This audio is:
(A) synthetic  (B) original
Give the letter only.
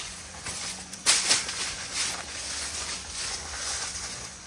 A